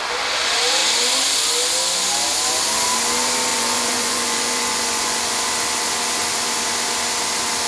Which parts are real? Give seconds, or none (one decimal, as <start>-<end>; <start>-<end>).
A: 0.0-3.5; 5.5-7.7